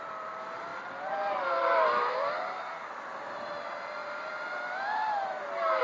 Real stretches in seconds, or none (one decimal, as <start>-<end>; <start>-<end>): 0.0-5.8